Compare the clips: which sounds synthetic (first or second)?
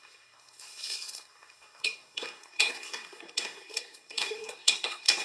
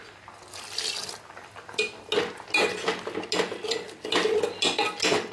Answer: first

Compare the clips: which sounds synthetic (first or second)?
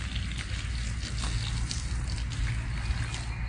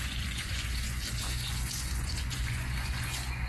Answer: second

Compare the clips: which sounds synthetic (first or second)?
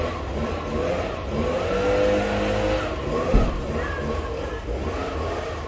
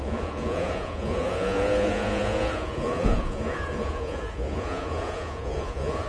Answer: second